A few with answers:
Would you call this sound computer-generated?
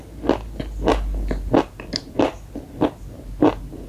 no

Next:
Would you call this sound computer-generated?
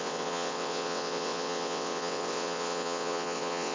yes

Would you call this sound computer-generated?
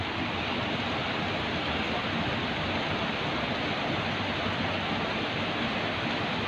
no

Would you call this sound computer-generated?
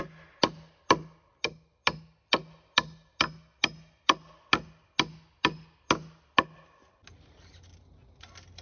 no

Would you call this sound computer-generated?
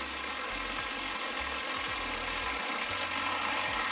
no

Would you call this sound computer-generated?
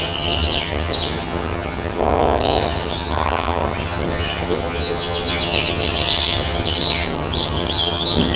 yes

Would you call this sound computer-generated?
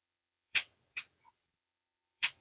yes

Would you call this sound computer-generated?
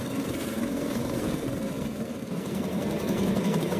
yes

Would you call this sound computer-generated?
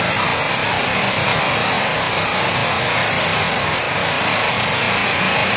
no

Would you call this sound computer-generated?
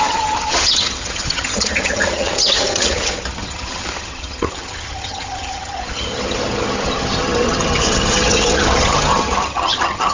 yes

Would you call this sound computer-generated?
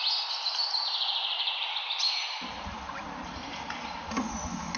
no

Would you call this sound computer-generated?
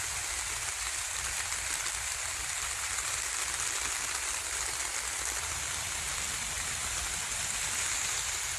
no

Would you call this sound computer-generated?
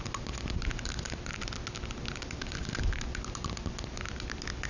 no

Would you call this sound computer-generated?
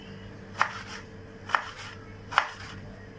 no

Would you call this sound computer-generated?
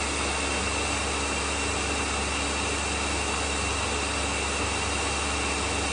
no